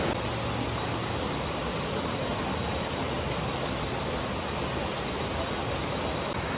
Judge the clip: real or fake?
real